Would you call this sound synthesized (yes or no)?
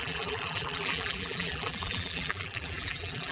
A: yes